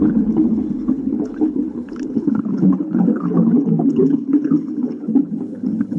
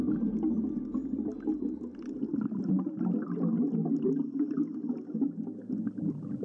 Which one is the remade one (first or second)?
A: first